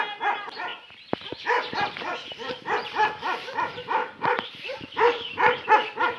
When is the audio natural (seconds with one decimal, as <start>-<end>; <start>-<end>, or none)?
0.0-4.0; 5.7-6.2